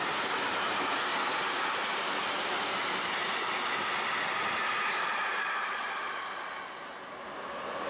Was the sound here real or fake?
real